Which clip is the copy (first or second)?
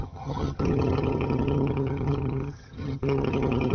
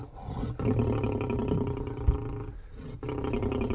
first